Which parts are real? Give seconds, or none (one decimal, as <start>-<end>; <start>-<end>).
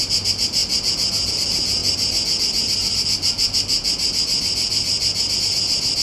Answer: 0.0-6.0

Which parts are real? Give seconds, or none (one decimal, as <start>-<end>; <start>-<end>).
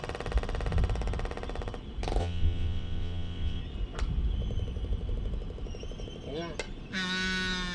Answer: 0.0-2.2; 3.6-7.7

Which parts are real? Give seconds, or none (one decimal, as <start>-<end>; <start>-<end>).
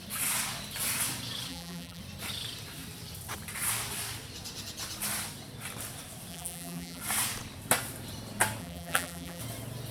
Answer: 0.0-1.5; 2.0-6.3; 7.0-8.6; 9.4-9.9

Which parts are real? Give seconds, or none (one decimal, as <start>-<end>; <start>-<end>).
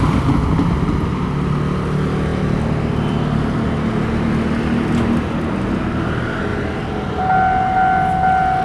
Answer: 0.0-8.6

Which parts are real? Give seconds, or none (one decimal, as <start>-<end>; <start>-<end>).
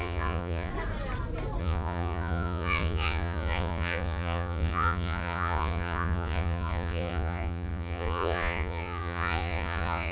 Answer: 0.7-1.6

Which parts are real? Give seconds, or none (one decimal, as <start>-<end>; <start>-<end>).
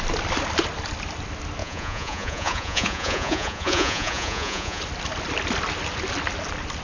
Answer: 0.0-1.6; 4.8-6.8